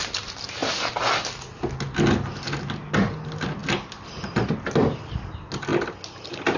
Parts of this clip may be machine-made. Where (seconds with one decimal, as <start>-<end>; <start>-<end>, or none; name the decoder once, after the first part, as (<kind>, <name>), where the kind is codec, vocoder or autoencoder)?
none